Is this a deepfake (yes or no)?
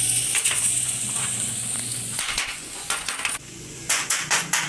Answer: yes